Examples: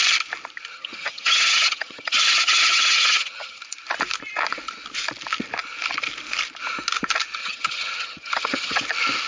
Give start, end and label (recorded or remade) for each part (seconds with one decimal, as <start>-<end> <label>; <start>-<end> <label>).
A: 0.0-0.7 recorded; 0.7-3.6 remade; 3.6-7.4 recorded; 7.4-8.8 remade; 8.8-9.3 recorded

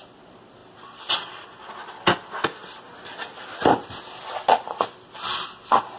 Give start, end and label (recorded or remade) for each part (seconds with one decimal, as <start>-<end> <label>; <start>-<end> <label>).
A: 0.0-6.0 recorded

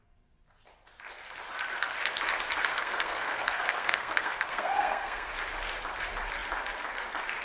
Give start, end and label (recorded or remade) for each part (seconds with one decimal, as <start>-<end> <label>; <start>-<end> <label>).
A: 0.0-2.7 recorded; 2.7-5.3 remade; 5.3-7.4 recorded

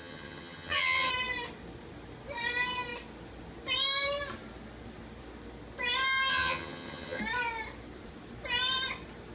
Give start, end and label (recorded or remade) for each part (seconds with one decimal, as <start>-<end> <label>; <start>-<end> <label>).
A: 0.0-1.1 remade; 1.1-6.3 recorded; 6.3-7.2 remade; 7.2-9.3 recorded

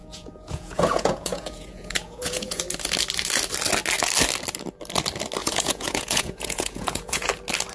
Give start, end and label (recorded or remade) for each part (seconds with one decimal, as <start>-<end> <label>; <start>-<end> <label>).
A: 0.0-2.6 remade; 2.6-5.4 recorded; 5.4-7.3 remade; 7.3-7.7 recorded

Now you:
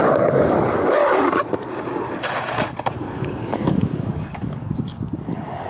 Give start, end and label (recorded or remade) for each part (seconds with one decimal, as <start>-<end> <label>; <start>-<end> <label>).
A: 0.0-1.0 remade; 1.0-3.0 recorded; 3.0-5.7 remade

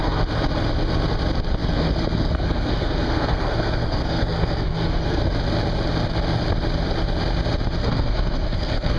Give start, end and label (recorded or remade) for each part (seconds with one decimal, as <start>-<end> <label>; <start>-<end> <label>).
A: 0.0-1.6 recorded; 1.6-5.2 remade; 5.2-7.8 recorded; 7.8-9.0 remade

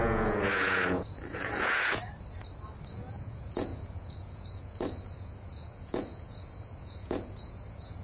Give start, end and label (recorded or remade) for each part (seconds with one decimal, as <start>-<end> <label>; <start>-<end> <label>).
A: 0.0-2.0 remade; 2.0-2.9 recorded; 2.9-8.0 remade